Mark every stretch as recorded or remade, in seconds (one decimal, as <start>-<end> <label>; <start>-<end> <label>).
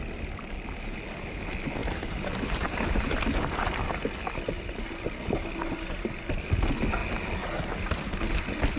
0.0-8.8 recorded